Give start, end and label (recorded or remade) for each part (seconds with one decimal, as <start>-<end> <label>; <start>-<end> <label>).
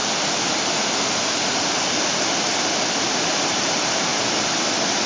0.0-3.1 recorded; 3.1-4.1 remade; 4.1-5.1 recorded